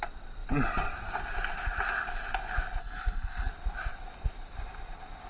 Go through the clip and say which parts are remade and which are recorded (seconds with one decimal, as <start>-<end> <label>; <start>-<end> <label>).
0.0-2.8 recorded; 2.8-3.5 remade; 3.5-5.3 recorded